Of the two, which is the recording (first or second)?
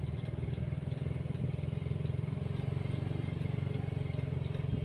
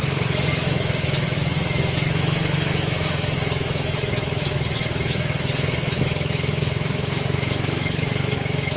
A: first